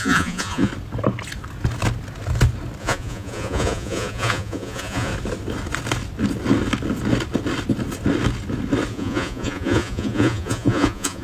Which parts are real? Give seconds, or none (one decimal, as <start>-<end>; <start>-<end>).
0.7-2.8; 5.1-8.9